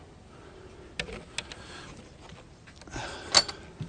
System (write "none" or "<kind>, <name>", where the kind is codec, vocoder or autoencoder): none